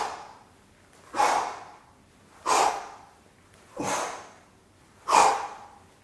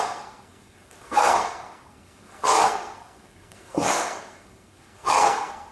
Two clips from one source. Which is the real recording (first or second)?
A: first